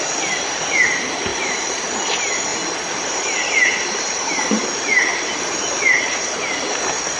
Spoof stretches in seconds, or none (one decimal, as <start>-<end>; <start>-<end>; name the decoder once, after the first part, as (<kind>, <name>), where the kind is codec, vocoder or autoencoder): 1.3-1.8 (vocoder, BigVGAN v2)